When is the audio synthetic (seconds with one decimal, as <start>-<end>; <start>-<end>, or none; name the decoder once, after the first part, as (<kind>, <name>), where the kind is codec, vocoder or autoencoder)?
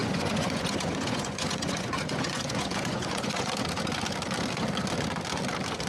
0.0-3.5 (vocoder, Vocos)